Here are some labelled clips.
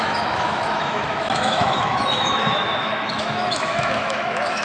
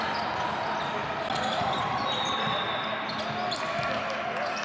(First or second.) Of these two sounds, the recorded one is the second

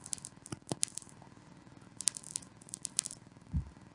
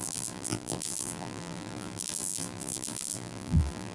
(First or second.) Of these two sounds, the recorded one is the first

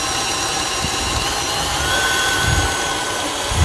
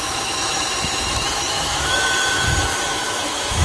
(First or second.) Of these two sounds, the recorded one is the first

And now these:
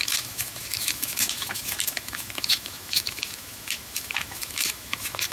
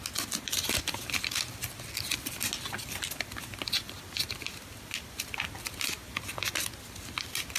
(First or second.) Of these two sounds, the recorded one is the second